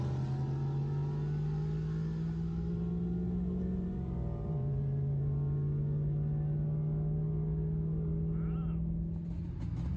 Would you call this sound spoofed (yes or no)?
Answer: no